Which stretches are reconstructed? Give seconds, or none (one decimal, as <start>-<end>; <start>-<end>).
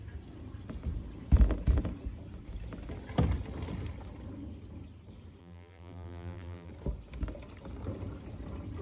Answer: 5.4-6.7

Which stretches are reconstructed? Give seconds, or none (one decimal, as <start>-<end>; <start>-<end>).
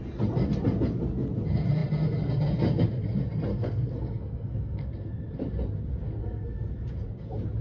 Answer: 3.5-4.9; 6.2-6.7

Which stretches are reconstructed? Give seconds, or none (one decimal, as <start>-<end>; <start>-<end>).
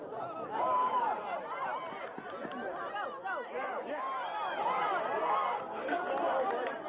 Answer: 5.2-6.0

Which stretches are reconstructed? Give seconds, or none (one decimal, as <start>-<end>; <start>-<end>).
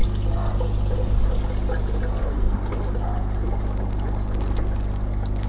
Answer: 2.2-2.6